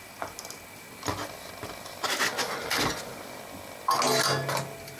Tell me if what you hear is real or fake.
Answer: real